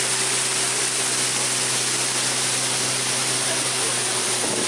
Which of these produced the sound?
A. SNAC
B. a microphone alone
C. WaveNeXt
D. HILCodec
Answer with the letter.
B